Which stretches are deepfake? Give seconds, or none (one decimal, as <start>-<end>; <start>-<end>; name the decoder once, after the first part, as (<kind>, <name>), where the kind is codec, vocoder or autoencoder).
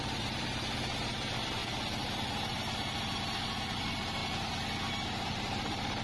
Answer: 0.0-4.2 (vocoder, BigVGAN v2); 4.9-6.0